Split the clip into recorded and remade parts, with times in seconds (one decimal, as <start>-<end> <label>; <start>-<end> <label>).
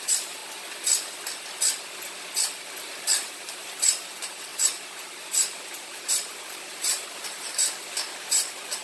0.0-0.4 remade; 0.4-2.9 recorded; 2.9-8.8 remade